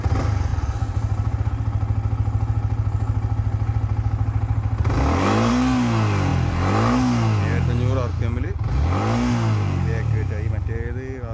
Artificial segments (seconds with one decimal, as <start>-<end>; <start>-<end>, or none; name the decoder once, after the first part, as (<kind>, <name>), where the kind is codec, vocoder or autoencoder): none